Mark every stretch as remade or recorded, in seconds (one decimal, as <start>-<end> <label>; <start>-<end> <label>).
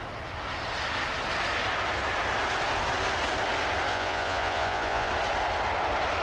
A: 0.0-3.9 recorded; 3.9-5.1 remade; 5.1-6.2 recorded